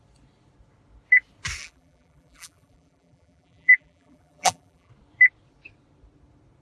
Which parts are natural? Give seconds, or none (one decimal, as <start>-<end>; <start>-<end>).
0.0-1.6; 4.9-6.6